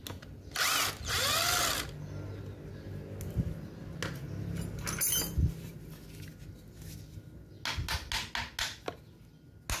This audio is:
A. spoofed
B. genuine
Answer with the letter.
B